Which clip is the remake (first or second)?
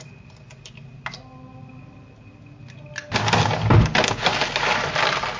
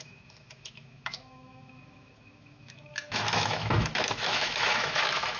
second